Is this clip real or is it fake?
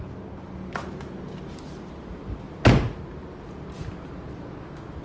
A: real